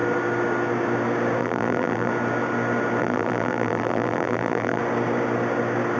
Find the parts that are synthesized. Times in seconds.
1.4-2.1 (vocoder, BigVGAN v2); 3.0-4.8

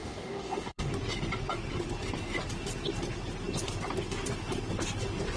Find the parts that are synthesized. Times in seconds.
0.0-0.9 (codec, DAC)

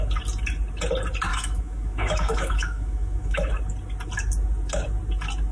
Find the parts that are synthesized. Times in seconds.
1.3-3.5 (autoencoder, DAC-VAE)

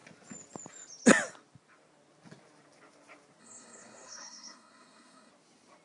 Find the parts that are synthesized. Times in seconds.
3.4-5.3 (codec, SNAC)

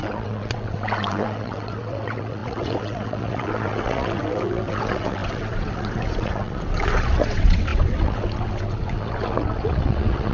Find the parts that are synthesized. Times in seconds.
0.0-10.3 (vocoder, WaveNeXt)

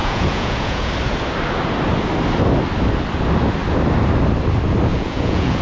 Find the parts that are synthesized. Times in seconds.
0.0-0.9 (vocoder, Vocos); 4.9-5.6